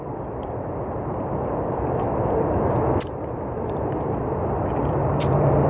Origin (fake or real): fake